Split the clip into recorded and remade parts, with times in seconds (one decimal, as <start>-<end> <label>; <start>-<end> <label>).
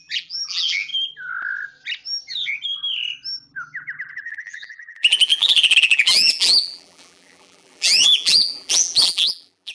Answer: 0.0-0.9 remade; 0.9-4.1 recorded; 4.1-9.7 remade